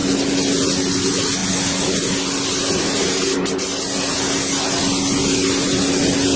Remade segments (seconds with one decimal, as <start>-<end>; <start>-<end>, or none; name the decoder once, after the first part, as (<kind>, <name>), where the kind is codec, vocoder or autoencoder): none